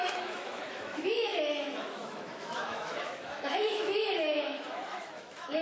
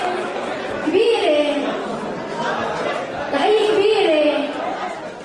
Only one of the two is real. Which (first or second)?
second